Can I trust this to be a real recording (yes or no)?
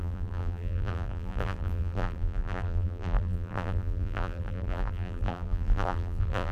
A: no